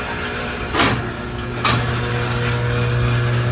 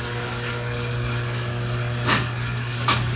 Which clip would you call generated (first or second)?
second